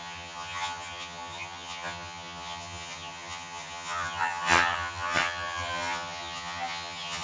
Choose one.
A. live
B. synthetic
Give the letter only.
B